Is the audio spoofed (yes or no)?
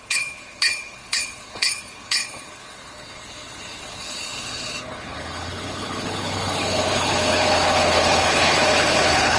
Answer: yes